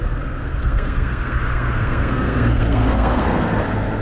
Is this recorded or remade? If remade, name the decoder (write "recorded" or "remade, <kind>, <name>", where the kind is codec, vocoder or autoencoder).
remade, codec, SNAC